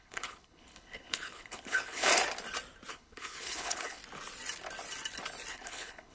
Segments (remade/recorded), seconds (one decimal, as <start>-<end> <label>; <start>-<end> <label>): 0.0-2.1 remade; 2.1-2.9 recorded; 2.9-4.0 remade; 4.0-5.5 recorded; 5.5-6.1 remade